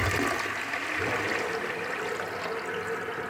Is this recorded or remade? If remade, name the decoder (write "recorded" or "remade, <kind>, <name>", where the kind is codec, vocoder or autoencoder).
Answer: recorded